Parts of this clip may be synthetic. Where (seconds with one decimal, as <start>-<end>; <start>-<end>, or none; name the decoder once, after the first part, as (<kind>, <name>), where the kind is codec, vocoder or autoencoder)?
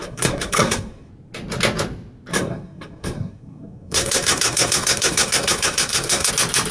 0.0-1.1 (codec, SNAC); 2.3-6.3